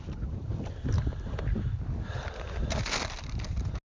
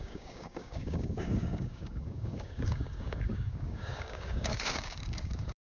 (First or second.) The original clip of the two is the first